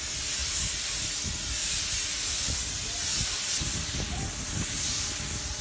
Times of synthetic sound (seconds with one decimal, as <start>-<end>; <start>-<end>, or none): none

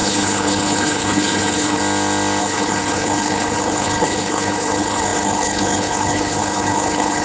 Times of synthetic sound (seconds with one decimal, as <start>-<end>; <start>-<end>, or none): 0.0-1.8; 2.4-7.2

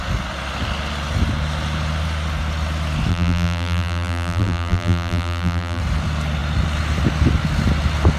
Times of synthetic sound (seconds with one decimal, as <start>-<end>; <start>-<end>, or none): 3.1-5.8

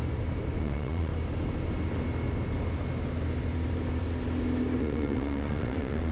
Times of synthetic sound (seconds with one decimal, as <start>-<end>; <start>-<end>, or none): 0.6-1.1; 4.8-6.1

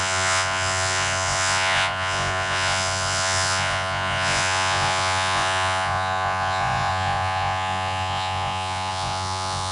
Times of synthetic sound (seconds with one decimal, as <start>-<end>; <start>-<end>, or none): 0.0-9.7

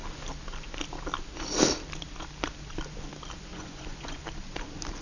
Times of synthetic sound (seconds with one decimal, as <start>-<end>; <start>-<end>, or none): 3.5-4.2